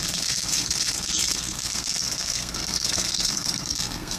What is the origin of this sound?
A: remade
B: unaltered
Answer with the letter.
A